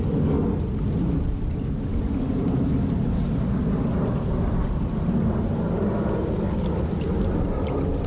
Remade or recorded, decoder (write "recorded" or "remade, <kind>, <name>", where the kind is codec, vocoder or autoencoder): recorded